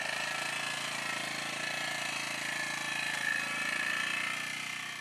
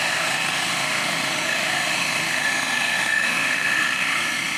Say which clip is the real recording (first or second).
first